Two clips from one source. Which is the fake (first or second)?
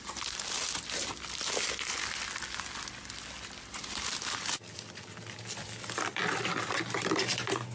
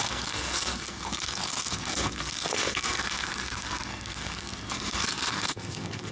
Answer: second